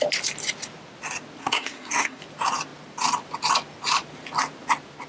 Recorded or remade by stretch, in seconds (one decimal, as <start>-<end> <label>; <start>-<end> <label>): 0.0-1.4 recorded; 1.4-2.2 remade; 2.2-5.1 recorded